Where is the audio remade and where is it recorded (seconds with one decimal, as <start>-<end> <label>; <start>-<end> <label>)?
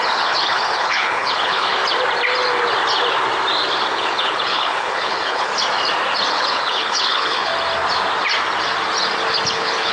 0.0-1.8 remade; 1.8-3.9 recorded; 3.9-5.5 remade; 5.5-6.3 recorded; 6.3-7.5 remade; 7.5-9.5 recorded; 9.5-9.9 remade